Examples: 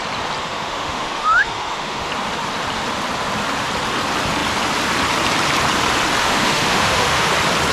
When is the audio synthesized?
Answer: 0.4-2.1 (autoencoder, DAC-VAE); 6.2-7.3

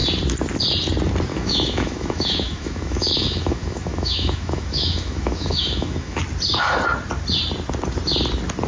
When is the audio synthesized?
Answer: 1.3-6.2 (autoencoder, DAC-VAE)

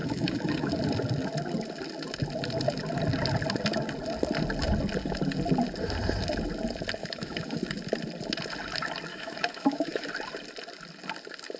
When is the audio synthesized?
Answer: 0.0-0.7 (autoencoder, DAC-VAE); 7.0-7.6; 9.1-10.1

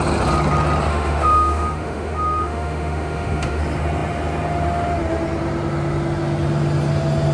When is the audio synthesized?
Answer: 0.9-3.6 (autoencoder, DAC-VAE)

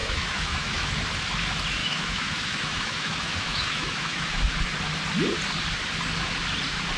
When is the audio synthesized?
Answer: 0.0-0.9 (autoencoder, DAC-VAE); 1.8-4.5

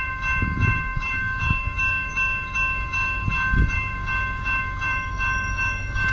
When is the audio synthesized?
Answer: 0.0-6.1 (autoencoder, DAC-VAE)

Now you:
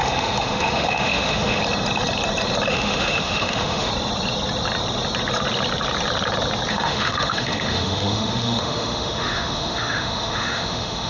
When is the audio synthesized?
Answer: 0.0-1.6 (autoencoder, DAC-VAE); 2.7-3.9; 6.7-11.1

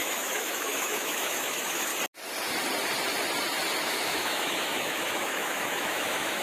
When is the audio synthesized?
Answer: 0.0-1.9 (autoencoder, DAC-VAE); 3.9-6.4